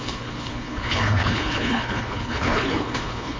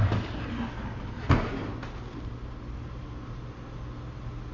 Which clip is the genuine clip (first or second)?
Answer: second